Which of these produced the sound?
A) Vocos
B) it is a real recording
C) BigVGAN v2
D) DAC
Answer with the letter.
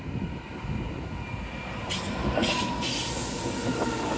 B